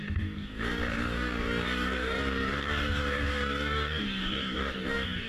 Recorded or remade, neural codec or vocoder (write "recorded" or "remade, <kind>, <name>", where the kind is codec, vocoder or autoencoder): remade, codec, DAC